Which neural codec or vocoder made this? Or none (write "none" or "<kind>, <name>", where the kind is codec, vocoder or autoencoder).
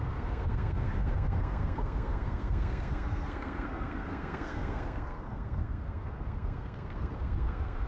codec, SNAC